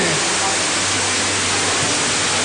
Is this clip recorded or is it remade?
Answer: recorded